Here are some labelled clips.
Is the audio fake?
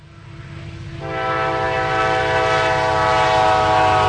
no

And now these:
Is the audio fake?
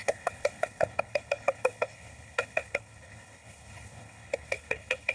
yes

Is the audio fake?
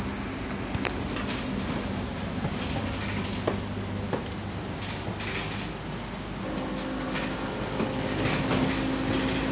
no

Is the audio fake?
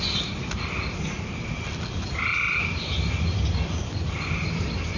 no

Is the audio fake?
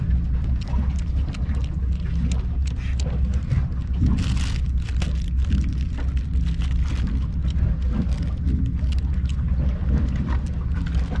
no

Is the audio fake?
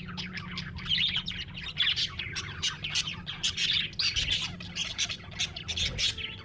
no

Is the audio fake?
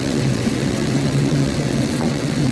yes